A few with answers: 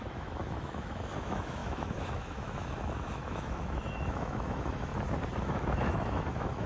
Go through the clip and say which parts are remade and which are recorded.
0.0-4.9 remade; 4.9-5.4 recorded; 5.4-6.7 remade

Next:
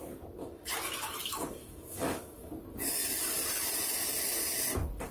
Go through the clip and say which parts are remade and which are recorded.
0.0-0.4 recorded; 0.4-2.5 remade; 2.5-5.1 recorded